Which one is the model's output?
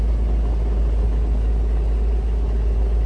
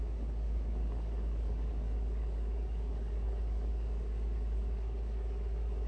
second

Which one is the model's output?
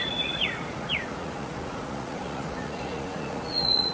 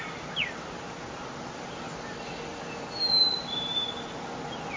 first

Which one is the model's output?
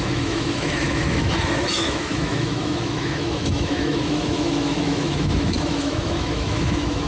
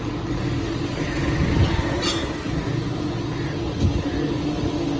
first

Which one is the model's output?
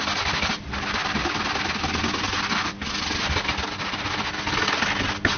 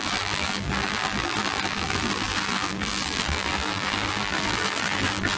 second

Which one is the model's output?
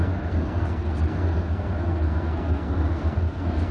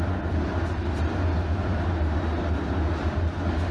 first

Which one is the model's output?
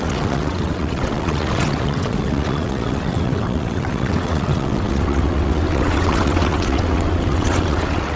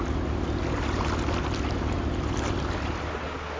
first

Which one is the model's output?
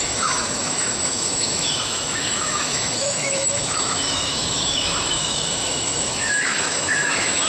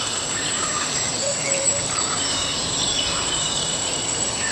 first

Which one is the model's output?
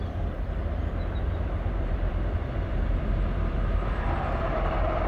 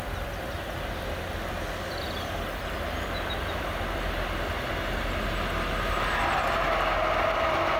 first